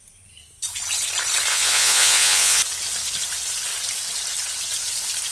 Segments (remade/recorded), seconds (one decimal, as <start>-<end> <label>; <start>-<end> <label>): 0.0-1.5 recorded; 1.5-2.6 remade; 2.6-5.3 recorded